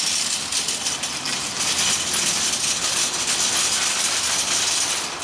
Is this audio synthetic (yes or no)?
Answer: no